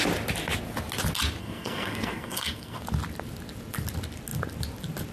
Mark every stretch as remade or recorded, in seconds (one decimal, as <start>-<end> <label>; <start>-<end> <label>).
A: 0.0-1.4 recorded; 1.4-2.8 remade; 2.8-5.1 recorded